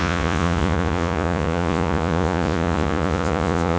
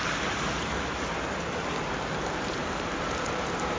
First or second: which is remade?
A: first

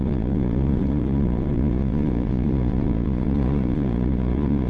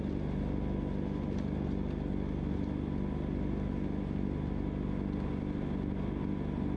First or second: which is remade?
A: first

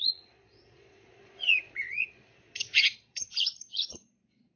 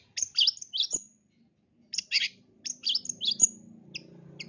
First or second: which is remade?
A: first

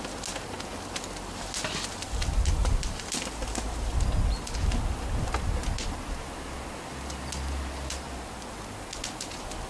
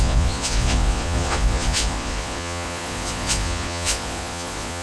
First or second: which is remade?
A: second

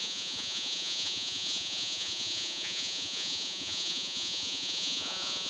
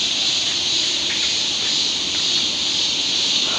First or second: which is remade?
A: first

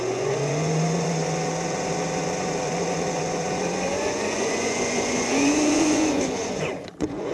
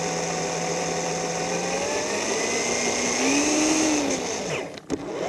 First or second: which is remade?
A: first